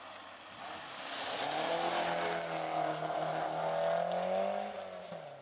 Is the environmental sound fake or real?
real